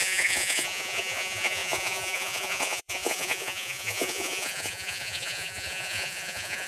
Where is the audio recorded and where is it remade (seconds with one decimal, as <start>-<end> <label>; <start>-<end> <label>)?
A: 0.0-6.7 remade